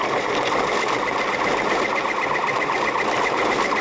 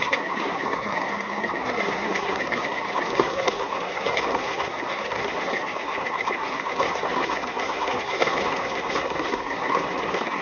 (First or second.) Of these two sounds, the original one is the first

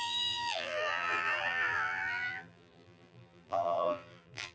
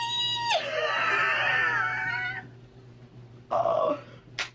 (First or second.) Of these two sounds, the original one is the second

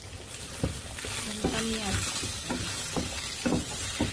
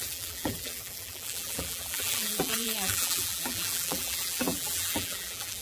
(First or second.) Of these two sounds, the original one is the first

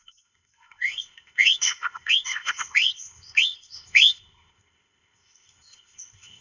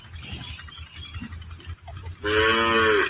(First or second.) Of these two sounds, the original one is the second